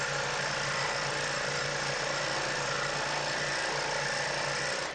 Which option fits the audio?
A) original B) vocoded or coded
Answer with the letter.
A